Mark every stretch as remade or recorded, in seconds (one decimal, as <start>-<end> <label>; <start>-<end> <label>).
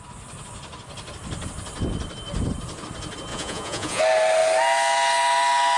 0.0-3.3 recorded; 3.3-4.0 remade; 4.0-5.8 recorded